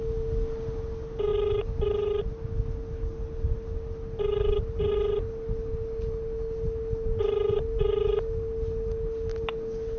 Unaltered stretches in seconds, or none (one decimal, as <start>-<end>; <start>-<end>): 0.0-10.0